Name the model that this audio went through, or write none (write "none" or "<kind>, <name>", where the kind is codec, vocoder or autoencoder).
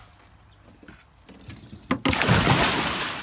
none